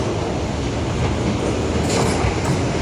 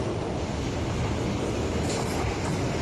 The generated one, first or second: second